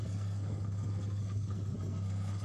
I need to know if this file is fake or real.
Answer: fake